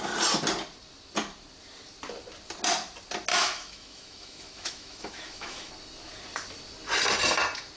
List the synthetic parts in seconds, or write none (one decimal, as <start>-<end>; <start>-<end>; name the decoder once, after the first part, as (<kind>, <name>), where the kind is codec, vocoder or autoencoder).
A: 3.3-5.7 (autoencoder, DAC-VAE)